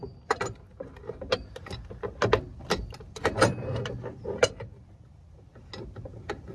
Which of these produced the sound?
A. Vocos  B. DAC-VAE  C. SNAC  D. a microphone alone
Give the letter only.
D